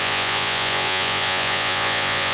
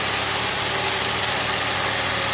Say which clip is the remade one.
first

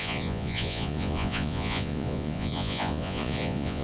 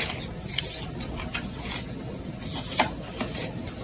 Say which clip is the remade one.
first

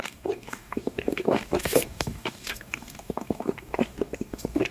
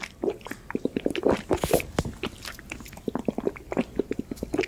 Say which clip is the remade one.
first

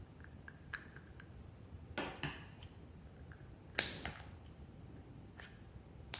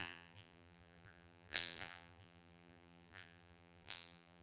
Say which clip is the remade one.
second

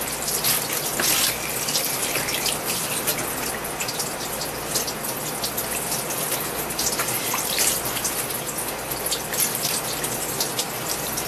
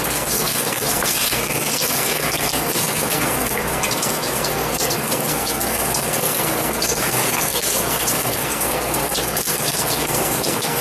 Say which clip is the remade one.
second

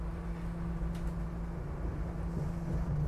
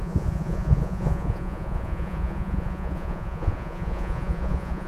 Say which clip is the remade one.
second